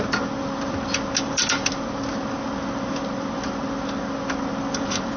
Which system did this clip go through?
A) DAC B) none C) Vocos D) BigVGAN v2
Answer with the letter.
B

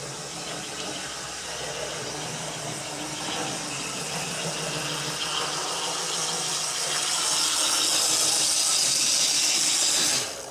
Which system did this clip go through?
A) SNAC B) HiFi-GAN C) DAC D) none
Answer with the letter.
D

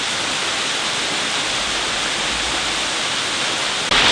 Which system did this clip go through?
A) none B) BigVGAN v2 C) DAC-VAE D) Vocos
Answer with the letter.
A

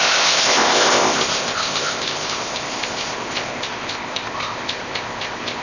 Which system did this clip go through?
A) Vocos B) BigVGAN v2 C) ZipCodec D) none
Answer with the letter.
C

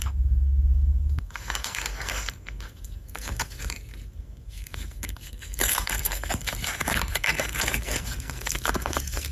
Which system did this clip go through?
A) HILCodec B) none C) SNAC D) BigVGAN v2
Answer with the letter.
C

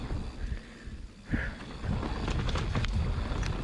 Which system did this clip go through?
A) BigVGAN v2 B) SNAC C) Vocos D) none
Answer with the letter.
D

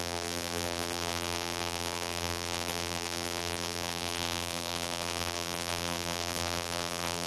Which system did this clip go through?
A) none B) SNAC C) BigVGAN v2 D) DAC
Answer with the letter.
C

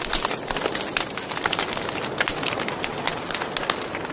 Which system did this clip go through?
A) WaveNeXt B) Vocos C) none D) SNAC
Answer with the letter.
C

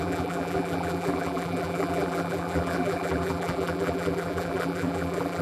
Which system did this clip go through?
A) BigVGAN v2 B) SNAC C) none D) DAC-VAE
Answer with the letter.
A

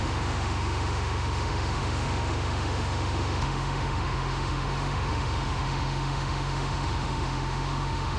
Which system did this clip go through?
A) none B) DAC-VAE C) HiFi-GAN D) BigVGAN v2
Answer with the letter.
B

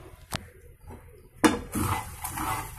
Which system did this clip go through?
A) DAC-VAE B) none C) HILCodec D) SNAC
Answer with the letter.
B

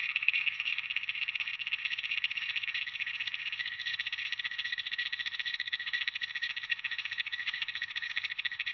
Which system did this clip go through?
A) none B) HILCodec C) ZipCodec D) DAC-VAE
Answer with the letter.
C